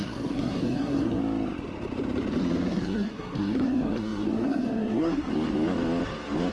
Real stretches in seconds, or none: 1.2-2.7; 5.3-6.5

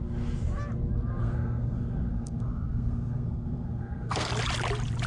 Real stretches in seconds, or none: 0.0-1.2; 4.3-5.1

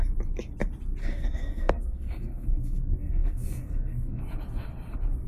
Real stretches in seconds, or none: 0.0-1.0; 4.2-5.3

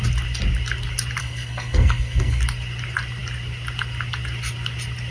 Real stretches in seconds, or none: 0.0-1.2; 2.4-5.1

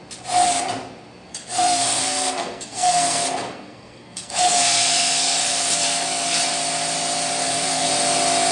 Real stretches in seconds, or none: 0.0-1.3; 6.4-7.4; 7.9-8.5

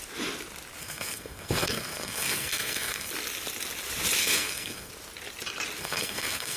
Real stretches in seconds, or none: 0.0-0.8; 3.1-4.2; 4.9-5.8